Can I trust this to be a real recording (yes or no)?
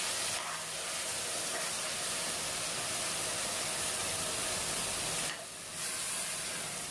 no